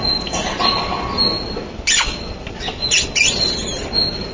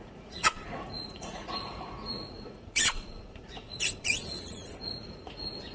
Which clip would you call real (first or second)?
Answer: first